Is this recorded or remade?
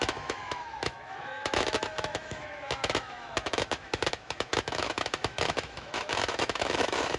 remade